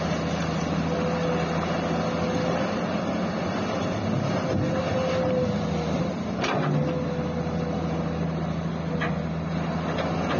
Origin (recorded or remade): recorded